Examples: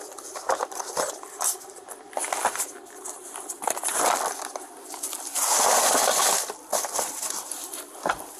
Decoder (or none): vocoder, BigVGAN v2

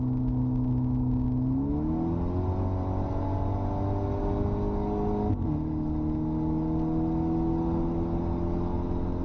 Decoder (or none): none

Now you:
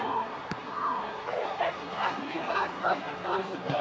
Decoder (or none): codec, SNAC